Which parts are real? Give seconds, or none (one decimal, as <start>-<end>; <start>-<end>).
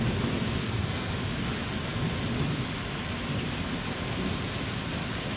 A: 0.0-0.6; 1.1-5.4